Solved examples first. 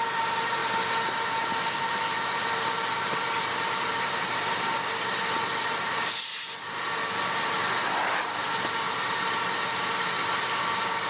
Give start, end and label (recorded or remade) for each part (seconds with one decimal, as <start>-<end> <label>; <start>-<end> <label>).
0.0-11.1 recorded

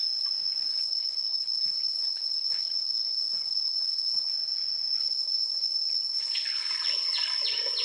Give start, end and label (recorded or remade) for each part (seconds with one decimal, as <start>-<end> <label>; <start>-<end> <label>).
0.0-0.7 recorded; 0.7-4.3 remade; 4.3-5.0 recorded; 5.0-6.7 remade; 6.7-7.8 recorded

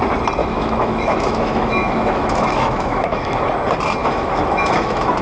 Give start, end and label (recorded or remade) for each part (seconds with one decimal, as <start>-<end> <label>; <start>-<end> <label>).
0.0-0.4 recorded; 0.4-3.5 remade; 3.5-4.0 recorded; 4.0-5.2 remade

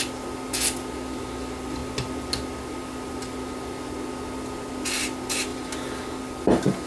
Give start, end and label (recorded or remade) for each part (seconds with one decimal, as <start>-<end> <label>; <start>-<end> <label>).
0.0-6.9 recorded

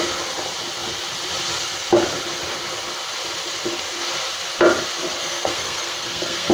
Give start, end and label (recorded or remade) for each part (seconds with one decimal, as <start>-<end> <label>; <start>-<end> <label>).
0.0-5.2 recorded; 5.2-6.5 remade

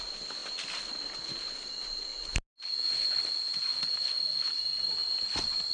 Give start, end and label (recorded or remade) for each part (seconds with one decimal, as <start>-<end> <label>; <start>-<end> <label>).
0.0-2.1 remade; 2.1-5.7 recorded